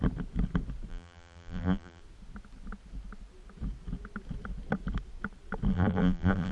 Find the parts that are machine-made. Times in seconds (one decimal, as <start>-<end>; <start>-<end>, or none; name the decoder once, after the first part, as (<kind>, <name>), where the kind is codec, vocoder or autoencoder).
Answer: 0.9-2.0 (vocoder, BigVGAN v2); 5.7-6.5